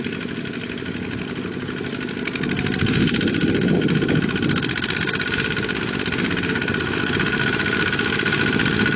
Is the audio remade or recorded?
recorded